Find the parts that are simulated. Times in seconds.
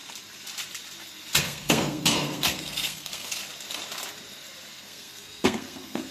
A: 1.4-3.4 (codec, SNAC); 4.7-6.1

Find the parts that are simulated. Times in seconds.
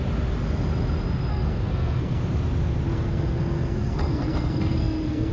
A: 1.3-2.2 (codec, SNAC); 2.9-5.3